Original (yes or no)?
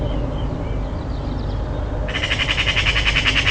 yes